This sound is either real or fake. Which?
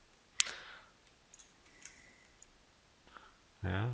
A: real